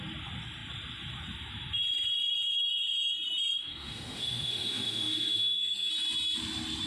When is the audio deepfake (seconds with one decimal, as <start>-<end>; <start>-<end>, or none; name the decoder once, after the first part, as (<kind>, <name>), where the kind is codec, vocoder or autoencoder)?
3.6-5.9 (autoencoder, DAC-VAE)